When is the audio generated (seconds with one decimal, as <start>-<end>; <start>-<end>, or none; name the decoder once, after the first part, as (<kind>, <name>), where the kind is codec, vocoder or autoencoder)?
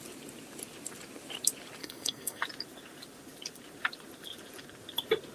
1.8-2.4 (codec, SNAC)